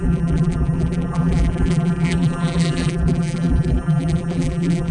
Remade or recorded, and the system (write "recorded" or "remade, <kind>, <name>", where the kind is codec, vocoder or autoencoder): remade, vocoder, BigVGAN v2